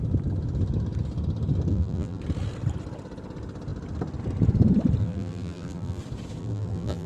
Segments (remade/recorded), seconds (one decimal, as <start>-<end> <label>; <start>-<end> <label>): 0.0-1.7 recorded; 1.7-2.2 remade; 2.2-5.0 recorded; 5.0-6.0 remade; 6.0-6.4 recorded; 6.4-7.1 remade